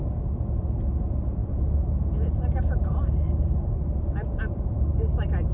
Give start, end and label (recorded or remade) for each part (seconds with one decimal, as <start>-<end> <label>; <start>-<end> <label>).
0.0-5.5 recorded